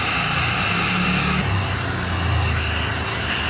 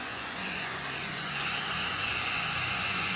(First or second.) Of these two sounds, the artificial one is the second